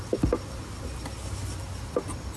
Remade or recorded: recorded